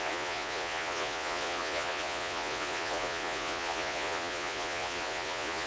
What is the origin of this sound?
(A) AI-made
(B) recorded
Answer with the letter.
A